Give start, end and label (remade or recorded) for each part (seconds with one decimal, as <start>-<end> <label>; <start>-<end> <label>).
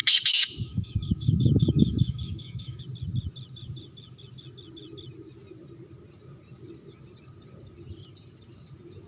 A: 0.0-2.8 remade; 2.8-9.1 recorded